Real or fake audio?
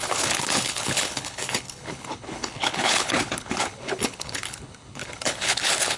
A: fake